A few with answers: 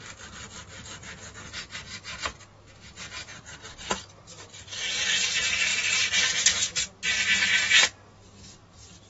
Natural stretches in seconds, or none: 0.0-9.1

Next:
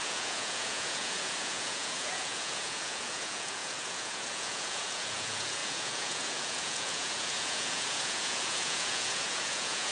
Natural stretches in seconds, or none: none